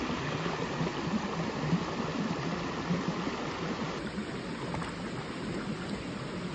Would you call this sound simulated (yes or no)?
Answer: no